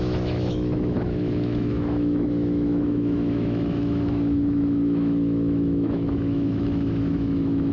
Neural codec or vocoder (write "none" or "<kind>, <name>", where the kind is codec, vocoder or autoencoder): autoencoder, DAC-VAE